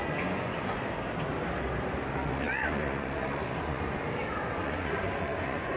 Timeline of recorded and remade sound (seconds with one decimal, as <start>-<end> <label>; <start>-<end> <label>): 0.0-0.8 remade; 0.8-2.2 recorded; 2.2-4.0 remade; 4.0-4.6 recorded; 4.6-5.8 remade